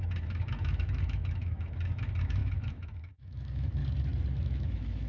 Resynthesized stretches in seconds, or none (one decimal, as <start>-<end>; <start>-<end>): 0.0-3.8; 4.4-5.1